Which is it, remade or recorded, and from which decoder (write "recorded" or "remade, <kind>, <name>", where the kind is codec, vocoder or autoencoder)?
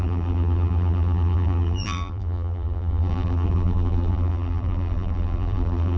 remade, vocoder, BigVGAN v2